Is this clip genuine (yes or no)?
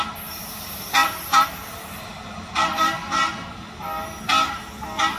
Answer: yes